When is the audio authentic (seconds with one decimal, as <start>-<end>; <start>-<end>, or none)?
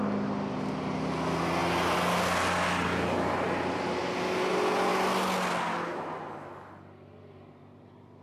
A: 0.0-8.2